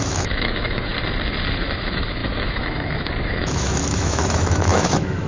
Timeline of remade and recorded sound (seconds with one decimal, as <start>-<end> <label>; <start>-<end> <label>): 0.0-0.9 remade; 0.9-1.6 recorded; 1.6-5.3 remade

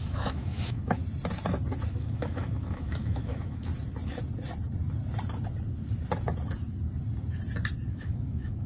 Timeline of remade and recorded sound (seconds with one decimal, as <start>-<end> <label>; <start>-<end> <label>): 0.0-1.0 remade; 1.0-1.9 recorded; 1.9-3.7 remade; 3.7-7.9 recorded; 7.9-8.7 remade

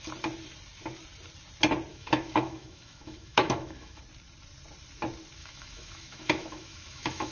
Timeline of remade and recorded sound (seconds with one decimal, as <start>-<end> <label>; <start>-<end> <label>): 0.0-1.9 recorded; 1.9-4.0 remade; 4.0-5.4 recorded; 5.4-7.3 remade

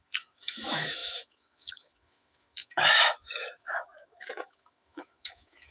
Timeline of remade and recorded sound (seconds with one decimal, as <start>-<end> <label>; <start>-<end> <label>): 0.0-5.7 remade

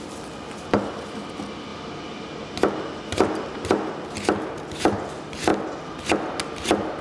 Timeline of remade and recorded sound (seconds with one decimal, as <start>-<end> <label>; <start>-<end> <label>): 0.0-7.0 recorded

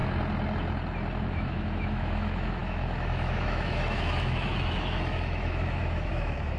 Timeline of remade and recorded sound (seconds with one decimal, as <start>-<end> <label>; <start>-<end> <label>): 0.0-1.3 recorded; 1.3-6.6 remade

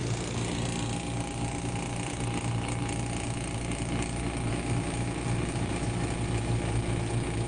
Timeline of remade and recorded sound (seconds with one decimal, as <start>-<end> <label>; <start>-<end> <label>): 0.0-4.5 recorded; 4.5-7.5 remade